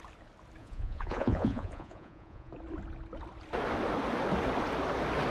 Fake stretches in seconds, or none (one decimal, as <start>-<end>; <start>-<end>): 0.6-2.5